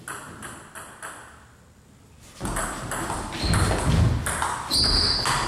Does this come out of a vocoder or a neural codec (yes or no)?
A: no